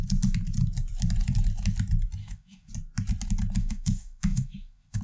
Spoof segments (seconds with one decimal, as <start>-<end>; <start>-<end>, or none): 2.2-2.7; 3.6-5.0